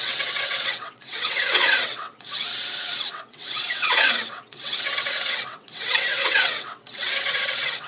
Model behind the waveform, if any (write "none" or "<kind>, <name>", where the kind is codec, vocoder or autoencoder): vocoder, WaveNeXt